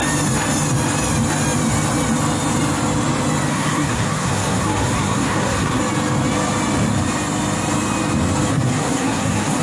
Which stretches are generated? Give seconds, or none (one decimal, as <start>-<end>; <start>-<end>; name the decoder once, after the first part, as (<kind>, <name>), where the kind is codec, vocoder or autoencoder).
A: 3.5-5.8 (codec, SNAC); 8.5-9.6